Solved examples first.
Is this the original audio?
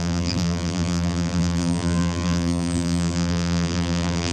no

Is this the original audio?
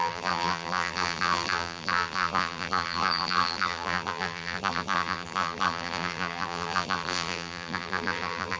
no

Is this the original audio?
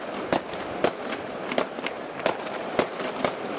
no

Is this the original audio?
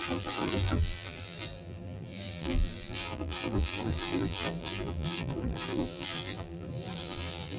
no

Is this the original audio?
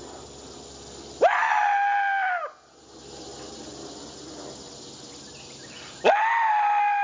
yes